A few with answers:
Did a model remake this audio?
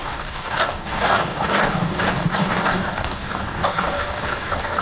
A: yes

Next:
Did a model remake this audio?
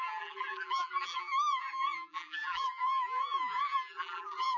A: yes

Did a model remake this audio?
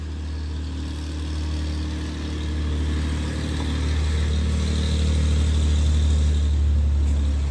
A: no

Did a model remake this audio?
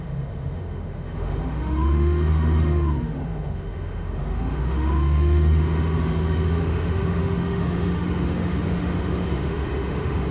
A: yes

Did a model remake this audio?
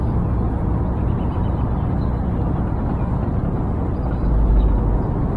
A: no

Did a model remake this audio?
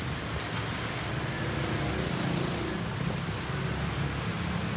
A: no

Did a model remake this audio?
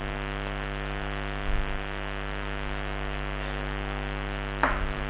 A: no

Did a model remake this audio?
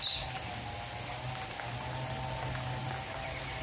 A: no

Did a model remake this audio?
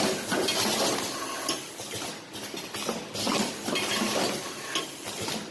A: no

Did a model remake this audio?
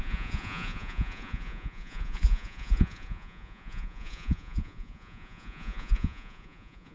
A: yes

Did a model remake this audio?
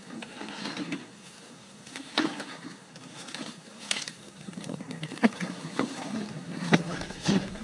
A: yes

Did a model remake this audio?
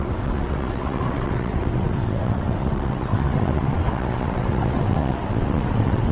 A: yes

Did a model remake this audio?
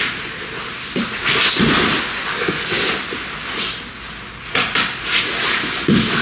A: no